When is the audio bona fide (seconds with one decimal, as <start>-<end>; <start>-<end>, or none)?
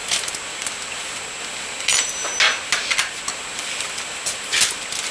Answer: 0.0-5.1